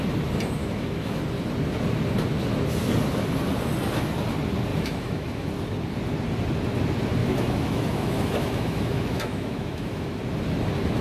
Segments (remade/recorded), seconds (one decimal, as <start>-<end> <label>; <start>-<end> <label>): 0.0-0.6 recorded; 0.6-1.2 remade; 1.2-4.7 recorded; 4.7-5.5 remade; 5.5-7.2 recorded; 7.2-10.2 remade; 10.2-11.0 recorded